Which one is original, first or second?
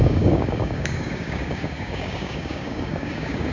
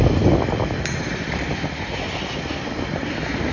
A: second